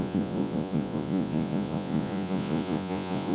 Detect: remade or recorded remade